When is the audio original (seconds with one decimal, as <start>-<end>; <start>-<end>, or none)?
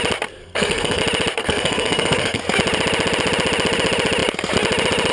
0.0-0.4; 1.0-1.4; 2.4-5.1